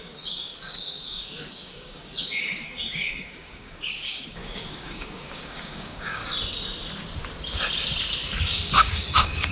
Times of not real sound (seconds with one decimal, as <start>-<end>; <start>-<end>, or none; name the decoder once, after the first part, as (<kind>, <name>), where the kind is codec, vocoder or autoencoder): 0.0-6.2 (codec, DAC); 8.4-9.5